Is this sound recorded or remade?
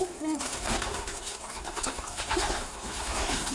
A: remade